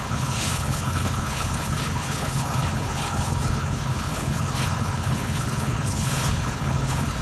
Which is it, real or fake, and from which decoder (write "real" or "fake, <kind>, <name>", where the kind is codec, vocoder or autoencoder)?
fake, codec, HILCodec